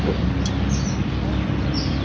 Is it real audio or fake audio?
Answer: real